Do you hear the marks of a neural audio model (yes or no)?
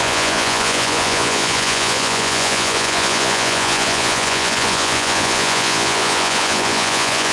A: yes